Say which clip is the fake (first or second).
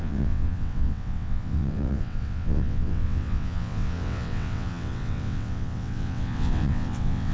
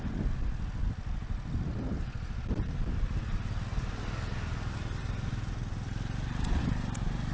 first